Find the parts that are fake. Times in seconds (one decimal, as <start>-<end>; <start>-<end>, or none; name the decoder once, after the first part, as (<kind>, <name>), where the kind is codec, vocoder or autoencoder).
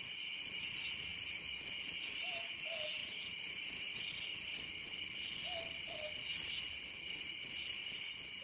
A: 3.0-4.0 (vocoder, Vocos)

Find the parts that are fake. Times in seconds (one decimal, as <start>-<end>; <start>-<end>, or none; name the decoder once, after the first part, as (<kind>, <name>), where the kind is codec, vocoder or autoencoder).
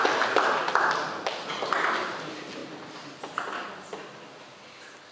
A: 2.6-3.2 (vocoder, BigVGAN v2)